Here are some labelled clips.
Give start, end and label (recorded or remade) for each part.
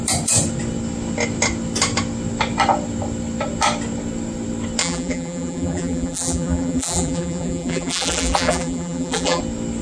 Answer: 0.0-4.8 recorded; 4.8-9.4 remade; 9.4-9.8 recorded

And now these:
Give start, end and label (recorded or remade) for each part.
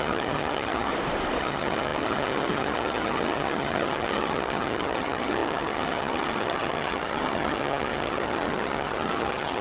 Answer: 0.0-0.9 remade; 0.9-1.4 recorded; 1.4-9.6 remade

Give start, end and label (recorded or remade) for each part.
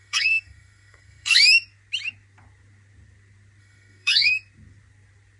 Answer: 0.0-1.4 remade; 1.4-3.6 recorded; 3.6-4.3 remade; 4.3-5.4 recorded